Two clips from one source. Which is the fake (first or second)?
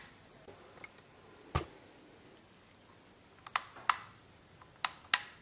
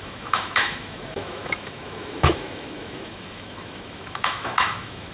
second